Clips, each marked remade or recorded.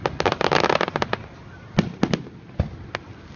recorded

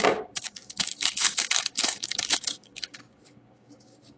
remade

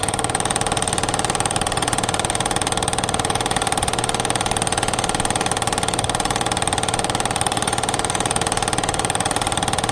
recorded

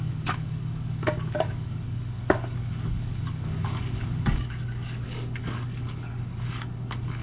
remade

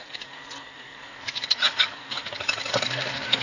remade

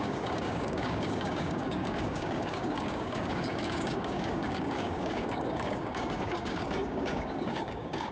remade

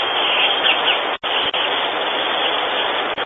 recorded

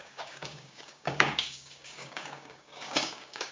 remade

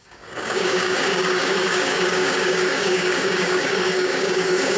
remade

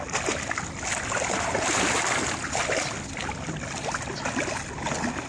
recorded